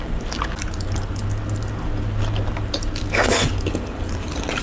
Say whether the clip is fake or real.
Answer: real